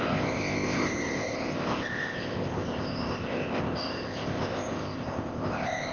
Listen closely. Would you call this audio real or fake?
fake